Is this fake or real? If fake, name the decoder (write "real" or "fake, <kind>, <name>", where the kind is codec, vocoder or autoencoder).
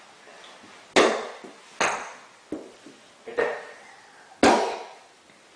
real